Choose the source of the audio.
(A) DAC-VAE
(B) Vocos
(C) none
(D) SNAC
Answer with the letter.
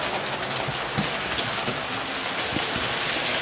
C